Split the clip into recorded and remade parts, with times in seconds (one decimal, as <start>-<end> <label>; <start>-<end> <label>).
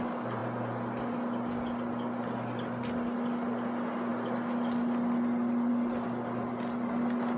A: 0.0-7.4 recorded